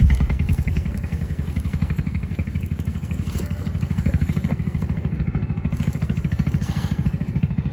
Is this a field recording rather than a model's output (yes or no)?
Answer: no